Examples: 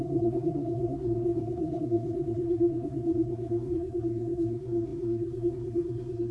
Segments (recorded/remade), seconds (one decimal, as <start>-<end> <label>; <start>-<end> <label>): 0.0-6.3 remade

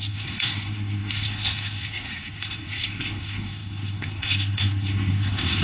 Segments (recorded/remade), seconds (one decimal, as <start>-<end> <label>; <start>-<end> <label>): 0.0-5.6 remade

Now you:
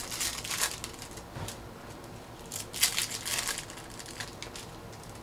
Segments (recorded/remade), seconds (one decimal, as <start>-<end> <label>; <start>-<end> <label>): 0.0-5.2 recorded